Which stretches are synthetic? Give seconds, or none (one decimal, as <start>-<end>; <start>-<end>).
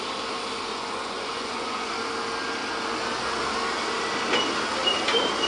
0.7-1.9